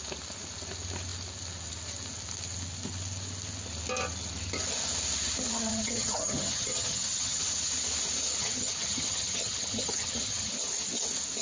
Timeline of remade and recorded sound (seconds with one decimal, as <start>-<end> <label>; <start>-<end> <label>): 0.0-5.7 recorded; 5.7-7.4 remade; 7.4-8.4 recorded; 8.4-10.5 remade; 10.5-11.4 recorded